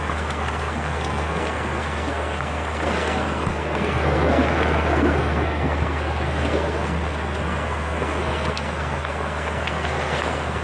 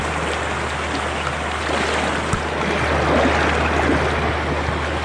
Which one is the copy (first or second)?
first